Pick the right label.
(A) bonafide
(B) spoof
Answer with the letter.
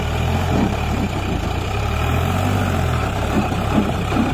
A